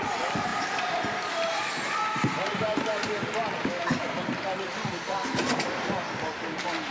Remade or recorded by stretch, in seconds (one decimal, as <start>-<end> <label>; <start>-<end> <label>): 0.0-6.9 recorded